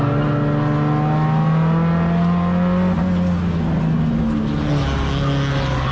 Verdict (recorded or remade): recorded